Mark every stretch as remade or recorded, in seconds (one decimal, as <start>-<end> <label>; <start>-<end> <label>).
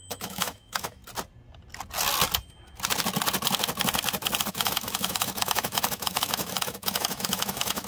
0.0-1.0 remade; 1.0-4.5 recorded; 4.5-7.9 remade